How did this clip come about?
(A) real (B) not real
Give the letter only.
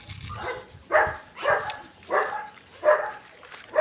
A